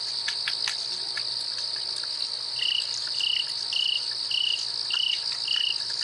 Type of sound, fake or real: real